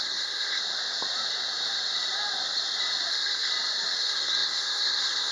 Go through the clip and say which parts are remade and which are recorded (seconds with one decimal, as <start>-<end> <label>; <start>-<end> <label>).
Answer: 0.0-0.6 remade; 0.6-3.1 recorded; 3.1-3.5 remade; 3.5-4.0 recorded; 4.0-5.3 remade

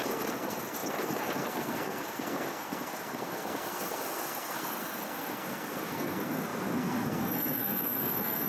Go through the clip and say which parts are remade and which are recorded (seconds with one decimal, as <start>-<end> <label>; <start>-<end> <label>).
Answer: 0.0-8.5 remade

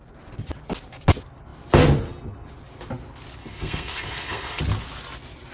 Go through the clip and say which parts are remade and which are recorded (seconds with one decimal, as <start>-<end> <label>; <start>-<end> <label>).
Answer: 0.0-3.4 recorded; 3.4-4.6 remade; 4.6-5.5 recorded

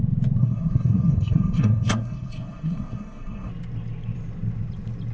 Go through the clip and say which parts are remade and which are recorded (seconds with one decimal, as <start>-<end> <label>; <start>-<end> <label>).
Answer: 0.0-0.4 recorded; 0.4-3.5 remade; 3.5-5.1 recorded

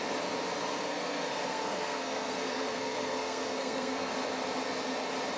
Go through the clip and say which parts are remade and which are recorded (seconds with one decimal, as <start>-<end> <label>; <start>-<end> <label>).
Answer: 0.0-0.9 recorded; 0.9-4.1 remade; 4.1-5.4 recorded